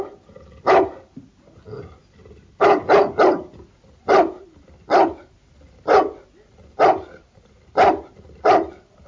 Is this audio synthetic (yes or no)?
no